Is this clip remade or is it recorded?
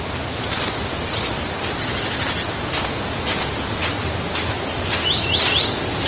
recorded